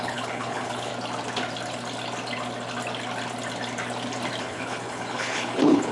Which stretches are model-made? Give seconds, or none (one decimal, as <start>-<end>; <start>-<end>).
0.0-0.9; 4.4-5.9